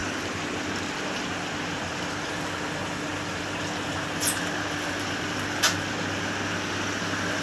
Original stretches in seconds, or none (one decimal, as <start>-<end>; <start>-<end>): 0.0-7.4